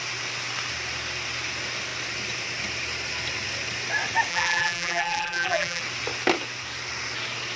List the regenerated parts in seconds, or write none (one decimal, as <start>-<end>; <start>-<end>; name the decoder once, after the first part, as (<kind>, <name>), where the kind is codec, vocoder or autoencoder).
4.3-5.8 (vocoder, BigVGAN v2)